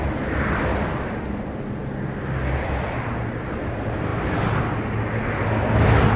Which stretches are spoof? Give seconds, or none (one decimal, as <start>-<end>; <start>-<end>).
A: none